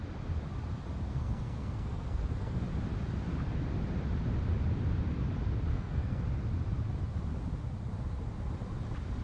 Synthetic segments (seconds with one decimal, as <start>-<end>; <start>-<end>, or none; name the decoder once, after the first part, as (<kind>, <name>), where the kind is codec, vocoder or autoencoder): 1.1-2.6 (codec, SNAC); 5.7-6.2